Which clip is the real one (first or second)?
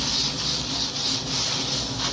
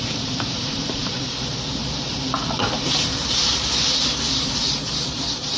first